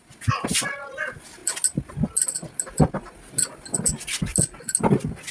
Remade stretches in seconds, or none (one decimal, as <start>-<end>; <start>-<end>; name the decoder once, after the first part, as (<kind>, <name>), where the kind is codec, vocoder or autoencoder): none